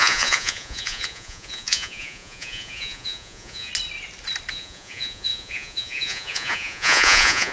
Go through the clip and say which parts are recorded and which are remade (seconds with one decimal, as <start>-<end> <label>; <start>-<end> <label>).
0.0-3.7 remade; 3.7-4.5 recorded; 4.5-7.5 remade